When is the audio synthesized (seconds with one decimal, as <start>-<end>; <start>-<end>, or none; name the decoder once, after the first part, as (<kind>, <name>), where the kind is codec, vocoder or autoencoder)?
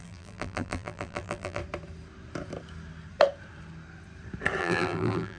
0.0-1.6 (vocoder, BigVGAN v2); 4.6-5.4